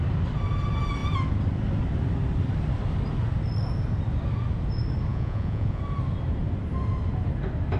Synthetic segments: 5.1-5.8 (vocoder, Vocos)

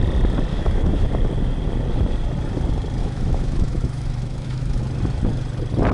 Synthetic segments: 0.5-1.1 (autoencoder, DAC-VAE); 3.0-4.8

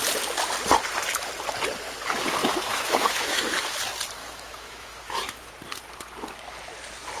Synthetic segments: 2.4-3.8 (autoencoder, DAC-VAE); 4.2-5.5